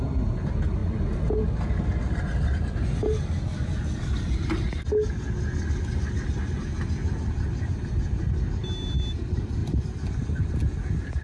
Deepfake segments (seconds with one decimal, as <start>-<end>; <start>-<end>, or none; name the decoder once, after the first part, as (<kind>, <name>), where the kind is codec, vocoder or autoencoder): none